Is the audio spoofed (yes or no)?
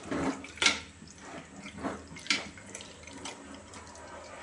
no